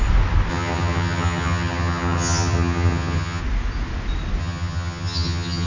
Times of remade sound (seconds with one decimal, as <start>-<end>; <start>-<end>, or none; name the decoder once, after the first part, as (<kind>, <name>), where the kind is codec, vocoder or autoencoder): 0.5-3.4 (vocoder, HiFi-GAN); 4.4-5.7